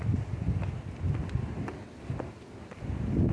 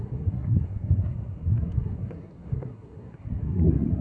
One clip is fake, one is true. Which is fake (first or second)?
second